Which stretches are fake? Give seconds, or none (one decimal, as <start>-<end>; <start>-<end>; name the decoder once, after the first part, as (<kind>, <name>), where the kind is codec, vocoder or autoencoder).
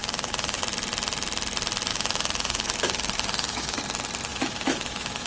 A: 0.0-0.6 (autoencoder, DAC-VAE); 1.9-3.8; 4.3-5.3